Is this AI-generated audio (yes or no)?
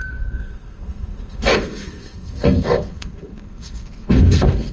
yes